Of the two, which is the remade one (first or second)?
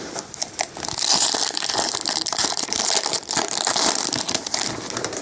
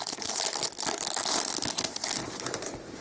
first